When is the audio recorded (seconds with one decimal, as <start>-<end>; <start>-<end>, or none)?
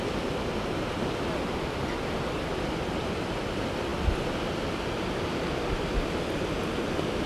0.0-7.3